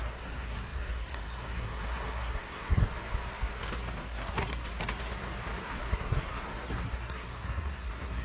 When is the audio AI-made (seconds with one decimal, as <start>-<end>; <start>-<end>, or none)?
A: 0.0-2.9; 4.0-4.7; 5.6-8.2